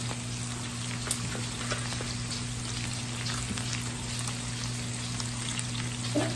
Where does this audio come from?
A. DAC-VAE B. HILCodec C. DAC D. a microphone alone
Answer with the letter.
D